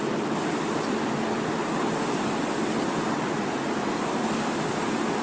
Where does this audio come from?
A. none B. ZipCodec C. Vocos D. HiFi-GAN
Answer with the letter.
A